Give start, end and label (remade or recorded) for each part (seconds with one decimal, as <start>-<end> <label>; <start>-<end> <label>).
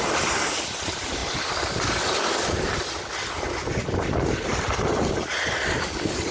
0.0-6.3 recorded